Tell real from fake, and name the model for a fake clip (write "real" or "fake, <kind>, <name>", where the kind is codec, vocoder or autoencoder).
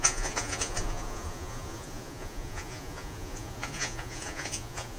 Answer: fake, vocoder, Vocos